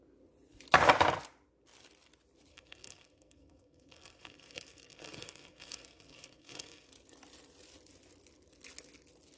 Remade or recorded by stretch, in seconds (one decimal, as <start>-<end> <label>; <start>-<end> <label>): 0.0-2.5 recorded; 2.5-6.9 remade; 6.9-9.4 recorded